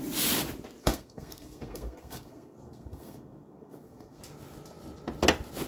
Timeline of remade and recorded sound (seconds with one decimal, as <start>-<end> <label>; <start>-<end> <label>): 0.0-0.8 recorded; 0.8-4.2 remade; 4.2-5.7 recorded